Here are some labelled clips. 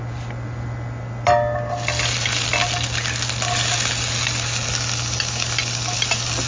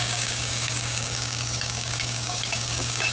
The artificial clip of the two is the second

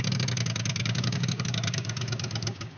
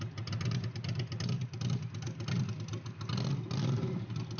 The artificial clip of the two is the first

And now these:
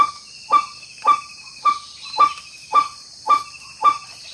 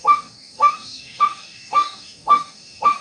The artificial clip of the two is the second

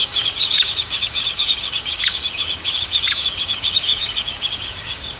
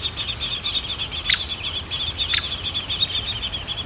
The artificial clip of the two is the first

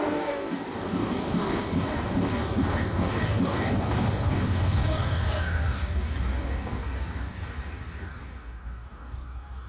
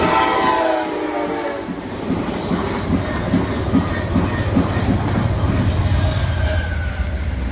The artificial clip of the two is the first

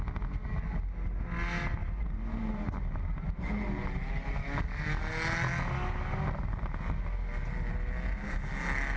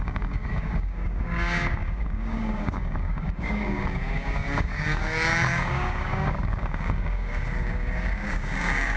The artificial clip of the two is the second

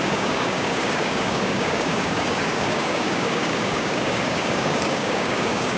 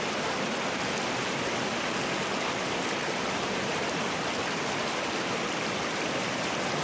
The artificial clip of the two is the first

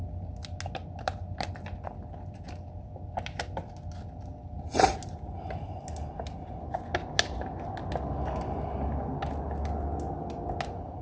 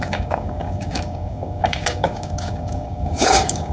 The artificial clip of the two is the second